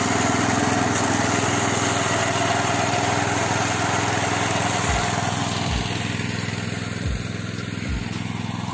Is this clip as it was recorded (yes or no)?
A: yes